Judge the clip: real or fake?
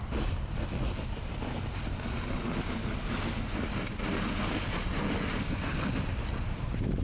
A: real